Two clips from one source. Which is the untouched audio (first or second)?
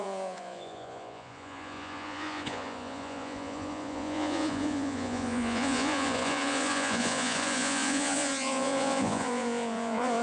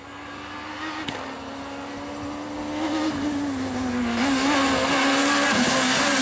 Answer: second